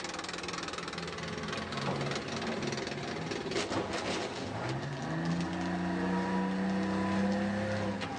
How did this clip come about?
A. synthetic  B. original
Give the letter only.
B